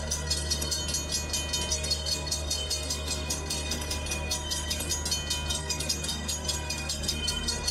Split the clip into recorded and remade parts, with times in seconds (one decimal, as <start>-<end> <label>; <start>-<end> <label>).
0.0-0.8 remade; 0.8-1.7 recorded; 1.7-4.9 remade; 4.9-5.5 recorded; 5.5-7.7 remade